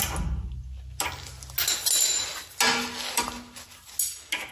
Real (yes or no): yes